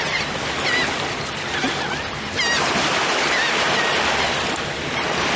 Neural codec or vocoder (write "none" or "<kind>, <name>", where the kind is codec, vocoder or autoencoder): none